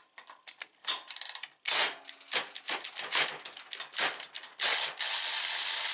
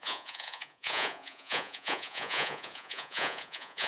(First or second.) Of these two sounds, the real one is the first